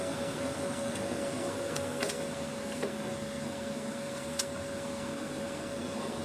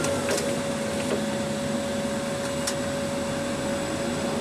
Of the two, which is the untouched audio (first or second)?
second